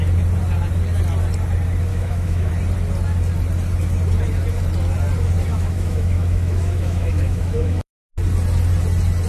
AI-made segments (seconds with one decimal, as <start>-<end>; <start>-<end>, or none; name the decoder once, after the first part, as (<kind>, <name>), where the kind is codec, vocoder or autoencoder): 1.9-2.5 (autoencoder, DAC-VAE); 5.5-8.1